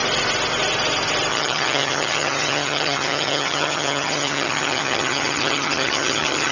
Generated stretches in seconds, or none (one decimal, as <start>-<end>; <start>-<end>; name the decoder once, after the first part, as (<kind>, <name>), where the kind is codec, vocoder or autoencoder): 1.3-6.5 (vocoder, HiFi-GAN)